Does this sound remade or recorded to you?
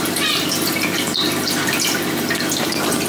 remade